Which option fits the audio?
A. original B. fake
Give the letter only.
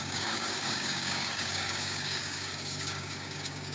B